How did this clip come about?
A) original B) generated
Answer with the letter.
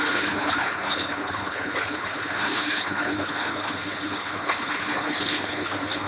B